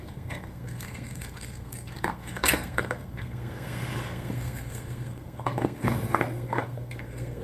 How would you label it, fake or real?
fake